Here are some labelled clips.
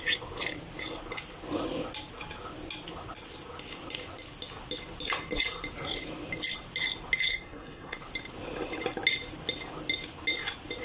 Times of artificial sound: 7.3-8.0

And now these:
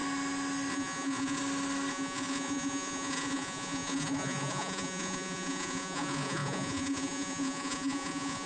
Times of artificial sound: 0.7-1.4; 1.9-8.5